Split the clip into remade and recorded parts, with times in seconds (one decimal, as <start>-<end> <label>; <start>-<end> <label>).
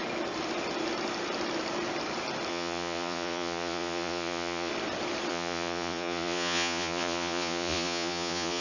0.0-2.5 recorded; 2.5-4.7 remade; 4.7-5.3 recorded; 5.3-8.6 remade